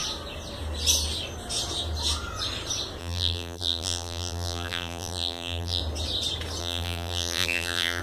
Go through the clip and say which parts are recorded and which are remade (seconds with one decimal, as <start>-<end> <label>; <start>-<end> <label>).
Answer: 0.0-3.0 recorded; 3.0-5.8 remade; 5.8-6.6 recorded; 6.6-8.0 remade